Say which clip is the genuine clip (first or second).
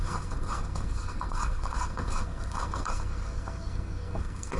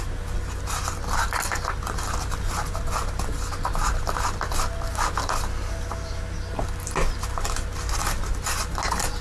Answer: second